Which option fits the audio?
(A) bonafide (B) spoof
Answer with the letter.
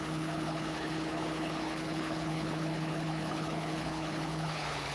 B